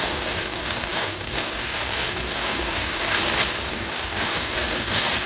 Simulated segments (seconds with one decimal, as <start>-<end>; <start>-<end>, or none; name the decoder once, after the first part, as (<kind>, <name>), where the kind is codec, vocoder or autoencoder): 0.0-3.2 (codec, DAC); 3.7-5.3